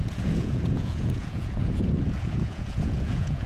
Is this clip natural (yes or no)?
no